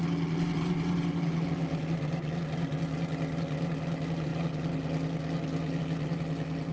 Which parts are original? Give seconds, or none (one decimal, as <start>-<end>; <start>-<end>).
0.0-6.7

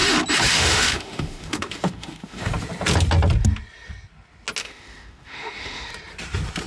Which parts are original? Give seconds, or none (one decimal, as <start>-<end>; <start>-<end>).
0.0-0.5; 2.5-4.6; 5.9-6.7

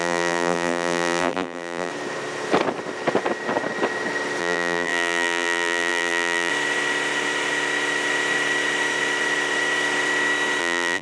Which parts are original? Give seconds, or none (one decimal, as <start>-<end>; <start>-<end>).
1.9-4.4; 6.5-10.6

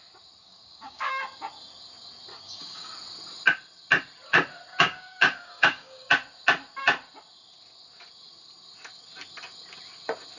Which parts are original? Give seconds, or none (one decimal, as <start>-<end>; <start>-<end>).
0.0-0.4; 1.1-2.3; 2.9-4.7; 6.1-10.4

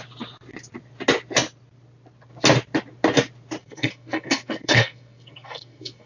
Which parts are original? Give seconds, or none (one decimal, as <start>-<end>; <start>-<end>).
0.0-3.6

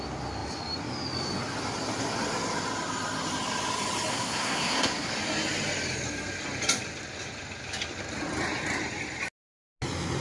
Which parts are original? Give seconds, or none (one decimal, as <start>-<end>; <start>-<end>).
0.0-4.1; 5.1-10.2

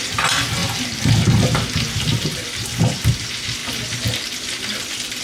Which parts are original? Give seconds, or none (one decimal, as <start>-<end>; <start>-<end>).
0.0-5.2

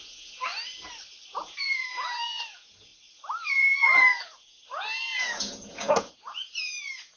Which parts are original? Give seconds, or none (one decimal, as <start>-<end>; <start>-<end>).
0.5-1.3; 2.9-3.5